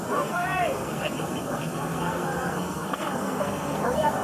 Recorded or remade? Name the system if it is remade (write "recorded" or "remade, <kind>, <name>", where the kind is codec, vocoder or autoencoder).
remade, codec, SNAC